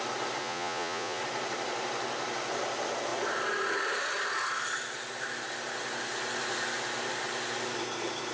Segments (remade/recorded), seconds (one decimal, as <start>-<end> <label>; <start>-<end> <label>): 0.0-0.4 recorded; 0.4-1.2 remade; 1.2-8.3 recorded